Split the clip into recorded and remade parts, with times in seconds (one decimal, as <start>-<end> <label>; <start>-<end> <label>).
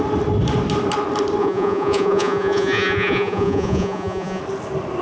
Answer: 0.0-1.4 recorded; 1.4-4.4 remade; 4.4-5.0 recorded